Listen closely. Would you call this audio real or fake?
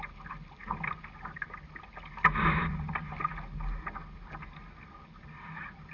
real